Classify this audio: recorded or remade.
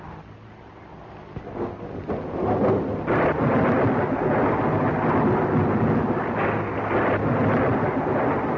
recorded